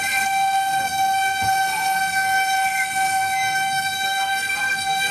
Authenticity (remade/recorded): remade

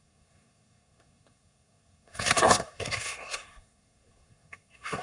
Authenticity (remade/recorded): remade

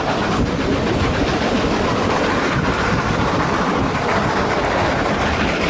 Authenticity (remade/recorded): recorded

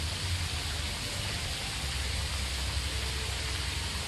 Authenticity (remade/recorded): recorded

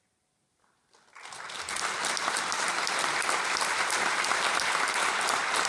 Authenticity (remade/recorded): recorded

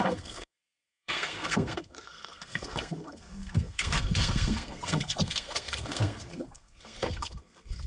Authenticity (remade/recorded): remade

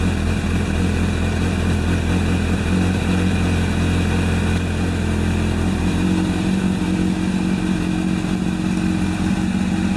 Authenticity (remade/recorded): recorded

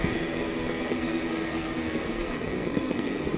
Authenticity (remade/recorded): remade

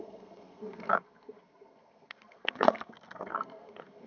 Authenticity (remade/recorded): remade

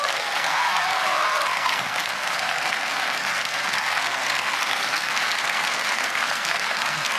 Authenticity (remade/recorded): remade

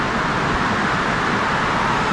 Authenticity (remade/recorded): recorded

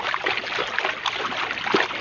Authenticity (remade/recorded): recorded